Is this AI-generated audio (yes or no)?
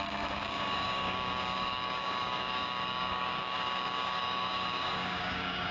yes